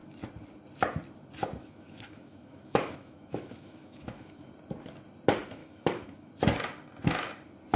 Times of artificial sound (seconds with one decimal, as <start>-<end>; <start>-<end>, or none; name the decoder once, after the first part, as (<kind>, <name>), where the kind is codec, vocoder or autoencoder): 1.6-4.5 (autoencoder, DAC-VAE); 5.6-6.3